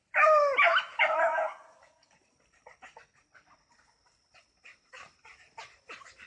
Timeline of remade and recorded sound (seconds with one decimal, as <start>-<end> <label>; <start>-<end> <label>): 0.0-1.3 recorded; 1.3-2.2 remade; 2.2-6.3 recorded